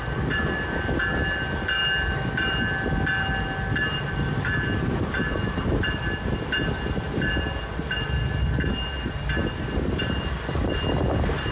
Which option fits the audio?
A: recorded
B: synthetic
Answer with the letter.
A